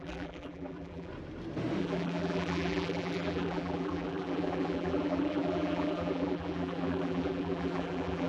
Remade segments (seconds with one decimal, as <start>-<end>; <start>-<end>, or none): 0.0-1.1; 1.8-8.3